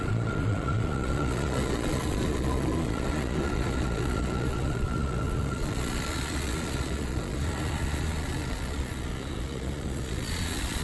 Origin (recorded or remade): remade